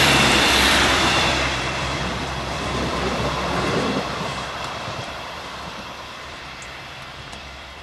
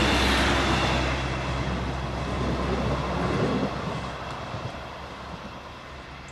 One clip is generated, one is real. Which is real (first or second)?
second